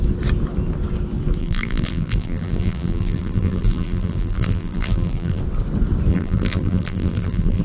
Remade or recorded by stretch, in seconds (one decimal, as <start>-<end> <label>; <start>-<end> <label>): 0.0-1.4 recorded; 1.4-5.4 remade; 5.4-6.1 recorded; 6.1-7.6 remade